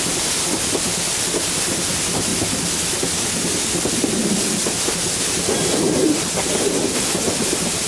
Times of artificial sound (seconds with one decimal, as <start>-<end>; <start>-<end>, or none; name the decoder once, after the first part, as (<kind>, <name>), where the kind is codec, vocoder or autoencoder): none